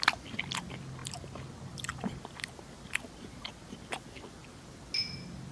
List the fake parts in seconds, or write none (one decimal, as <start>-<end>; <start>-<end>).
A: none